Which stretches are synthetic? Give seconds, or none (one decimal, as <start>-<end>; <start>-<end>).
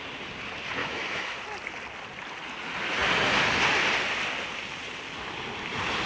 0.8-1.4